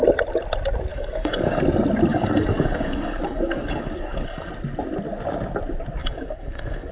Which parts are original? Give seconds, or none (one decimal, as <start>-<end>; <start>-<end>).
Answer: 0.0-0.9; 1.6-2.1; 4.5-6.0